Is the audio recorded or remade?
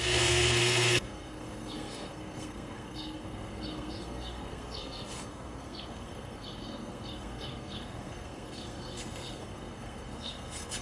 remade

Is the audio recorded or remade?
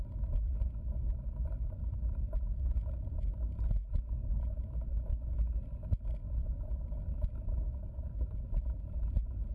recorded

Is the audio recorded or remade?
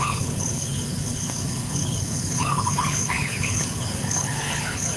remade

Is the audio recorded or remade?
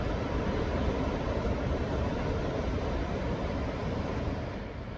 recorded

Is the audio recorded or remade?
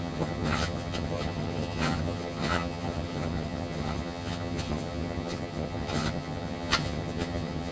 remade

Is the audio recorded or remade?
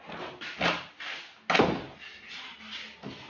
recorded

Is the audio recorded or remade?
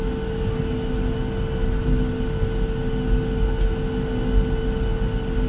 recorded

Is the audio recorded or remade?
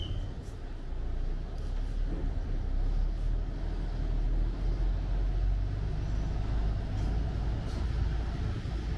recorded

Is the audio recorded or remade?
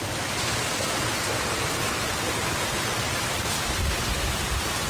remade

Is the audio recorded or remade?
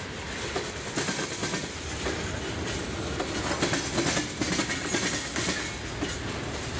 recorded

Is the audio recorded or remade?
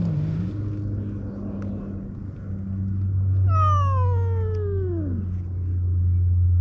recorded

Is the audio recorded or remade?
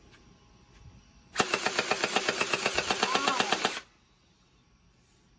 recorded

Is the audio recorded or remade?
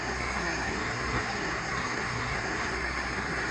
remade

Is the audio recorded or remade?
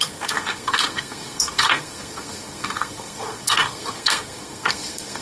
remade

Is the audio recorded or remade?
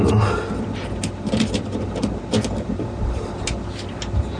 recorded